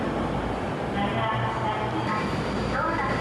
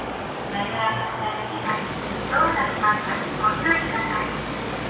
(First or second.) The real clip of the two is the first